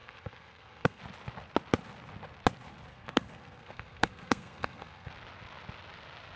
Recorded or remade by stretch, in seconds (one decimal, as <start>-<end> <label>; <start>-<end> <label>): 0.0-1.0 remade; 1.0-2.9 recorded; 2.9-5.1 remade; 5.1-6.4 recorded